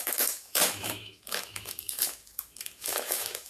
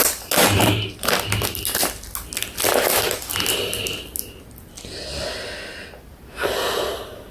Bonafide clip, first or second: second